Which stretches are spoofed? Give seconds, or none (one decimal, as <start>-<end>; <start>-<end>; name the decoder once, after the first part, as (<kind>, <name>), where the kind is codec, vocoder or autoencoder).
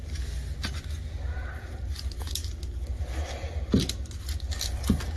none